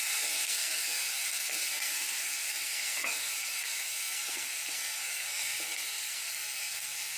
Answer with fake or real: fake